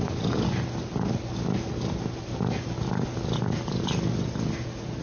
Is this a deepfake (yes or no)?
no